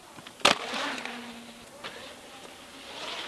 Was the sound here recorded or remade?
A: recorded